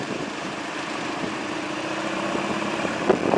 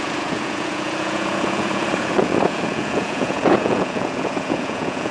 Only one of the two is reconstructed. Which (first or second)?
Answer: second